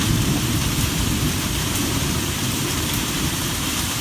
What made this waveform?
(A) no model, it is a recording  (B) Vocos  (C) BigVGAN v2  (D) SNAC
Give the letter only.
C